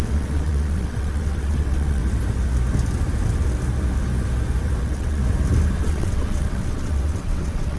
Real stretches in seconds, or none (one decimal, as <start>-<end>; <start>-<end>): 2.0-4.8; 5.2-5.8